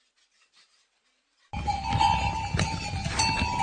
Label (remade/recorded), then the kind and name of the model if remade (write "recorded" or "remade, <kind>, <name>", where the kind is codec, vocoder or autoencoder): recorded